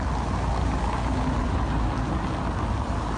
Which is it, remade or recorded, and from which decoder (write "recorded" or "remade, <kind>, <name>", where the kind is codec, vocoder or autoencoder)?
recorded